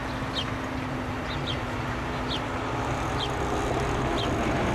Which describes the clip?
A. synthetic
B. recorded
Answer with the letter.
B